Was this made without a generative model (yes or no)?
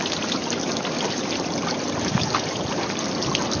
yes